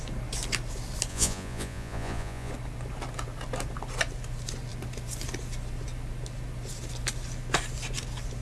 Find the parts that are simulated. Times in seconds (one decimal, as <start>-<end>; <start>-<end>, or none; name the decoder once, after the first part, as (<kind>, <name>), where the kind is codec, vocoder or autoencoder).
1.1-2.5 (vocoder, Vocos)